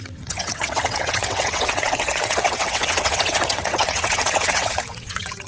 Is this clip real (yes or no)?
no